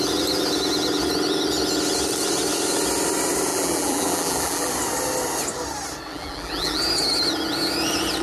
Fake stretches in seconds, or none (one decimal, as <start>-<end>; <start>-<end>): 3.5-4.7; 6.1-6.8